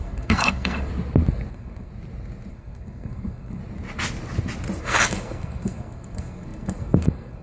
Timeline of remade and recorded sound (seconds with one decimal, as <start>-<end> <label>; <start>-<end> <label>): 0.0-0.9 remade; 0.9-1.5 recorded; 1.5-1.9 remade; 1.9-2.5 recorded; 2.5-3.6 remade; 3.6-4.8 recorded; 4.8-7.4 remade